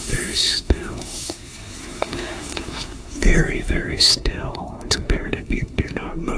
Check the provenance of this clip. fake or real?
fake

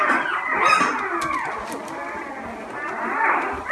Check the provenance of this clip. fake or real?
real